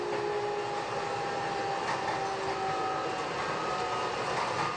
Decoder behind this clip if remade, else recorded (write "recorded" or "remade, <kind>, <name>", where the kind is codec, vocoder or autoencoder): recorded